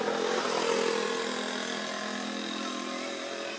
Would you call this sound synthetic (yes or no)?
no